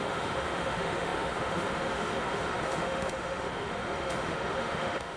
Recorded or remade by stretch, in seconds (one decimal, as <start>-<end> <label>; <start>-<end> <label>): 0.0-5.2 remade